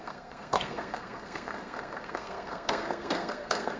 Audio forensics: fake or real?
fake